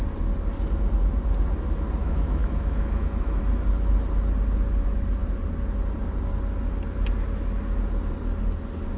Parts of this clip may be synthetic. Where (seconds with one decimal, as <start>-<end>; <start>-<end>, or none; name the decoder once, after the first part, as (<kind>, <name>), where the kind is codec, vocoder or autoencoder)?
2.0-3.4 (autoencoder, DAC-VAE)